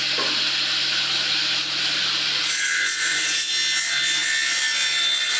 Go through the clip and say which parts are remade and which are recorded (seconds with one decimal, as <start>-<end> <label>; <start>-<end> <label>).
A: 0.0-2.4 recorded; 2.4-3.5 remade; 3.5-5.4 recorded